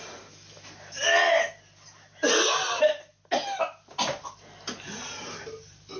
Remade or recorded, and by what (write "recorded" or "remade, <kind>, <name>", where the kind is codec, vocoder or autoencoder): recorded